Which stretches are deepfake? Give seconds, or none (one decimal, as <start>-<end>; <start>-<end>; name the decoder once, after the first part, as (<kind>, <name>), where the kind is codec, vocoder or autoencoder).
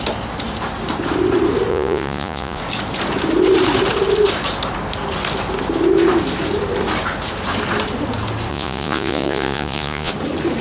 1.7-2.6 (vocoder, Vocos); 8.5-10.1